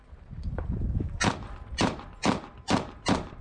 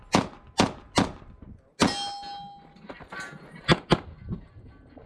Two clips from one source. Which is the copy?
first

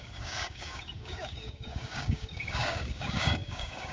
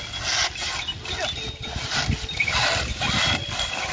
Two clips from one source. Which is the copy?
first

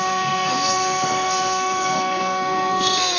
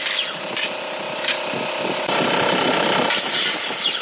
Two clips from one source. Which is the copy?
first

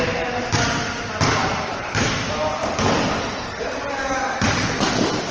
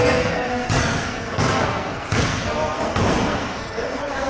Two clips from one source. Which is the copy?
second